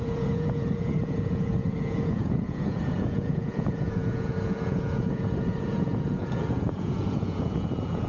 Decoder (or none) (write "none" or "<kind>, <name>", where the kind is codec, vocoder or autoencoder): vocoder, Vocos